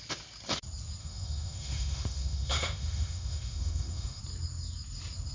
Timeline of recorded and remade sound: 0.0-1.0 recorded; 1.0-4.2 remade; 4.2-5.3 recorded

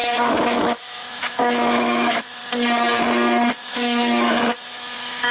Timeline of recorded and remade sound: 0.0-2.4 remade; 2.4-3.6 recorded; 3.6-5.3 remade

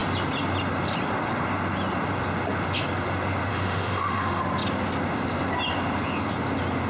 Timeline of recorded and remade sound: 0.0-3.5 recorded; 3.5-4.4 remade; 4.4-6.9 recorded